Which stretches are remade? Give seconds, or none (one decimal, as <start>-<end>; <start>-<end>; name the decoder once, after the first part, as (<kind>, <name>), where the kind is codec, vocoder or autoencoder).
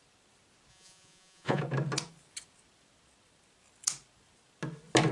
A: 0.7-1.6 (vocoder, Vocos)